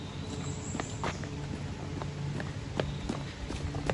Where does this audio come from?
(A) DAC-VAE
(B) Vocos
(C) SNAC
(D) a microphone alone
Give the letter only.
D